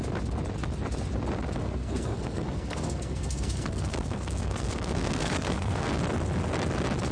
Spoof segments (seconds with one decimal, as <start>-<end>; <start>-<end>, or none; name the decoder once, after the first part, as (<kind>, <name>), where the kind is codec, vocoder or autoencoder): 1.6-5.9 (codec, SNAC)